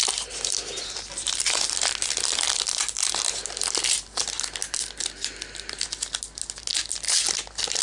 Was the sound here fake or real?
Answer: real